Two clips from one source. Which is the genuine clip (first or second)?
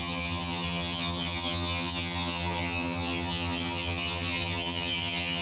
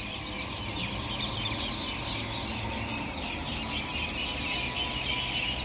second